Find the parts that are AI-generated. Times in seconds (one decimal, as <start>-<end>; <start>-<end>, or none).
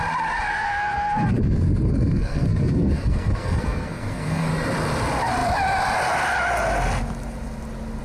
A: 0.5-4.5